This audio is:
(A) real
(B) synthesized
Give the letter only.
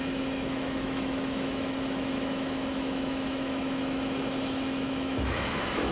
B